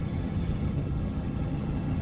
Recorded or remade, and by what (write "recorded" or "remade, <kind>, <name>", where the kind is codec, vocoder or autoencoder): remade, vocoder, HiFi-GAN